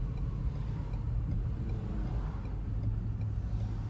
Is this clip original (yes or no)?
yes